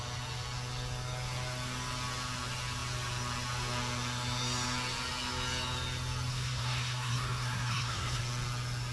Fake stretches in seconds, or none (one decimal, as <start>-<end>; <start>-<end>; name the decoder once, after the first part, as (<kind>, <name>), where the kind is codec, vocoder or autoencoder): 6.3-8.2 (codec, SNAC)